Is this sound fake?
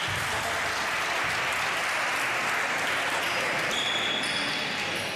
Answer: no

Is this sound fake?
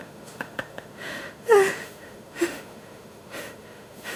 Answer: yes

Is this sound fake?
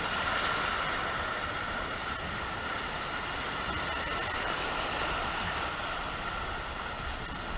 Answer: no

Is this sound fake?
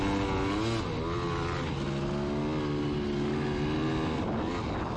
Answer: no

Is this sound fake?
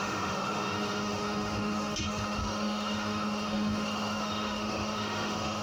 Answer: yes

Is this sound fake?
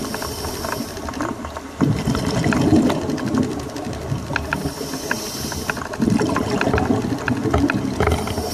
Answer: no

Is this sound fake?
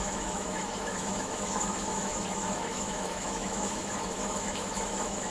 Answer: yes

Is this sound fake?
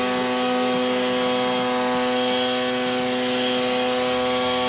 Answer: no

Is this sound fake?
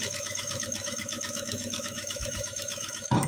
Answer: yes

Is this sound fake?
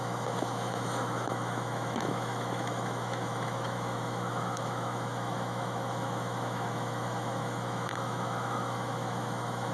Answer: yes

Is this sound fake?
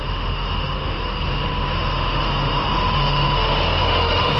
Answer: yes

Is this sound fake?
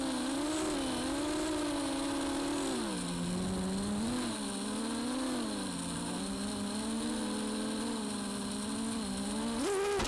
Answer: no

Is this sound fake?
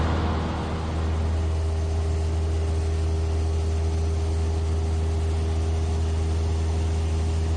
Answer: no